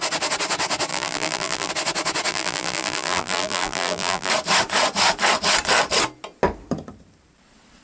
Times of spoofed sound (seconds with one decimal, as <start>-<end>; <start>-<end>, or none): 0.9-1.7; 2.3-4.3